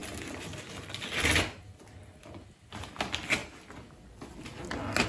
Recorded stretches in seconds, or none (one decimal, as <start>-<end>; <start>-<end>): 0.0-5.1

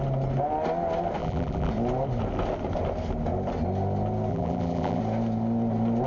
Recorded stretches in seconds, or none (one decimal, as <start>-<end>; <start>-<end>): 0.0-1.2; 1.7-4.3; 5.0-6.1

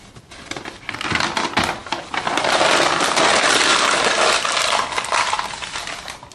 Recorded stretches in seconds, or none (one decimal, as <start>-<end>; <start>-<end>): 1.8-2.4; 3.7-4.2

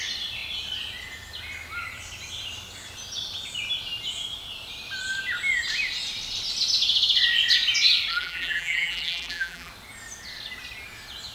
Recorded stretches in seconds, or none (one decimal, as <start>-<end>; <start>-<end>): 0.0-8.1; 9.7-11.3

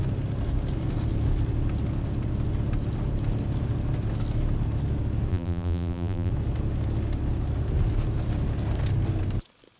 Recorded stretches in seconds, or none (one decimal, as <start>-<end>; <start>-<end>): 0.0-5.3; 6.3-9.8

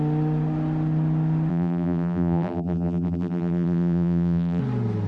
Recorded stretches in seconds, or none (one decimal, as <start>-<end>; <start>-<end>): 0.0-1.5; 4.6-5.1

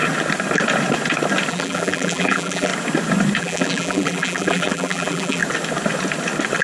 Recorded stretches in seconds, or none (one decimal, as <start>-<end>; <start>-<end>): 0.0-1.5; 2.7-3.4; 5.4-6.6

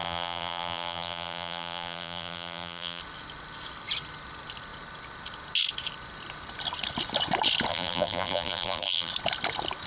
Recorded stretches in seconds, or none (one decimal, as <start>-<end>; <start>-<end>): 3.0-7.7; 9.1-9.9